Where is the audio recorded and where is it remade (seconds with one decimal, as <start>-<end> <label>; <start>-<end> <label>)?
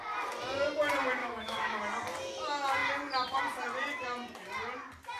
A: 0.0-1.2 recorded; 1.2-1.8 remade; 1.8-5.2 recorded